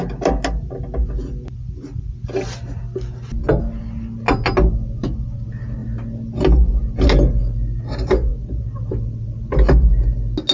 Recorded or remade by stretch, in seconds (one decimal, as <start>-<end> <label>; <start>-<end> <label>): 0.0-10.5 recorded